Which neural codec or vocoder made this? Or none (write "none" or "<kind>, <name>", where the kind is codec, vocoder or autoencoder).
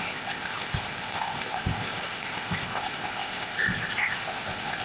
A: codec, ZipCodec